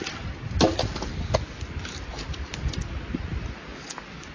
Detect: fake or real real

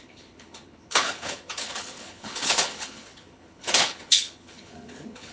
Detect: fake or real fake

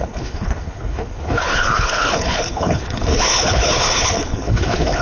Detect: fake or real fake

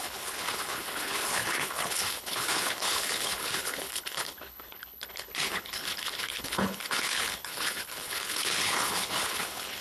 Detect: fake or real fake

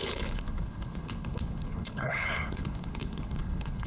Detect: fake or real fake